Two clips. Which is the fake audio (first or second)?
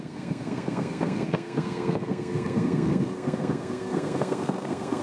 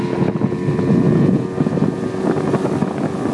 first